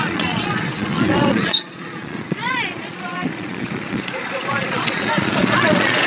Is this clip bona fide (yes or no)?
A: no